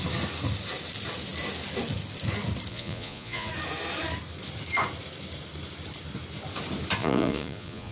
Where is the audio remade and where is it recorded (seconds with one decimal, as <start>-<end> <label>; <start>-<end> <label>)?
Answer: 0.0-2.7 recorded; 2.7-3.5 remade; 3.5-7.0 recorded; 7.0-7.9 remade